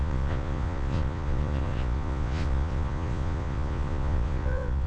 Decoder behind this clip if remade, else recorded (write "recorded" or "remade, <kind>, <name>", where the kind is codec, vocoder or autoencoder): remade, vocoder, Vocos